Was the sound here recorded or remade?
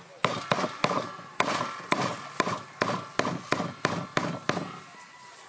recorded